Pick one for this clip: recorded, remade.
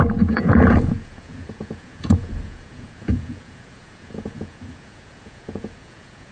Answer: remade